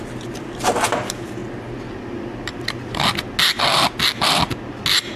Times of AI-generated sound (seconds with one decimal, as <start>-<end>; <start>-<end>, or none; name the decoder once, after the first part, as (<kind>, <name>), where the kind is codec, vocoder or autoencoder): none